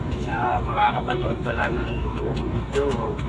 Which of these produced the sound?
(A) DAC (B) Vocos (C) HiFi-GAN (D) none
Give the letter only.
A